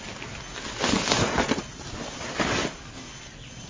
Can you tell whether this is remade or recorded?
recorded